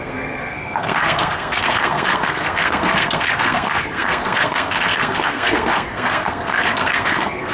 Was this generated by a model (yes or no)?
yes